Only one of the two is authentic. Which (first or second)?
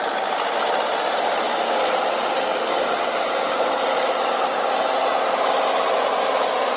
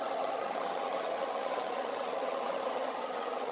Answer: first